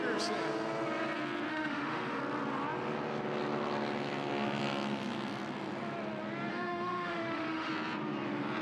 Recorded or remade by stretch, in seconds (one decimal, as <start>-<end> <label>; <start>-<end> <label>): 0.0-1.5 recorded; 1.5-2.2 remade; 2.2-6.5 recorded; 6.5-7.7 remade; 7.7-8.6 recorded